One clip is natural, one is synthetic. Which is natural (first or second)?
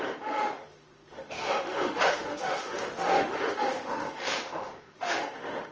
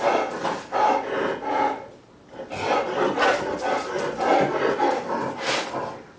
second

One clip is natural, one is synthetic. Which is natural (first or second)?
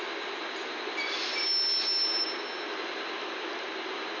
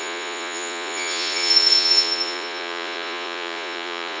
first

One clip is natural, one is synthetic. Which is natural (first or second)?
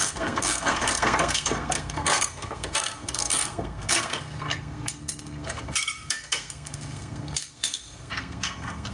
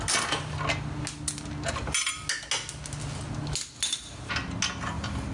second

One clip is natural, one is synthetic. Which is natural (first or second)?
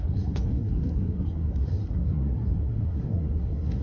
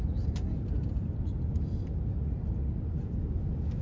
second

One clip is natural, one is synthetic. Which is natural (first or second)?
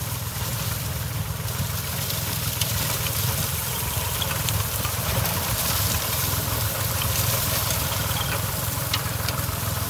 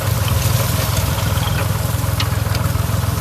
second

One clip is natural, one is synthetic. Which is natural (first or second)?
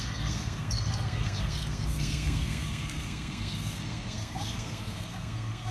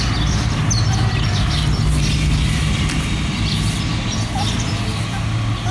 second